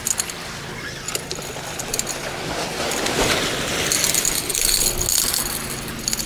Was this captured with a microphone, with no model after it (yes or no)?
yes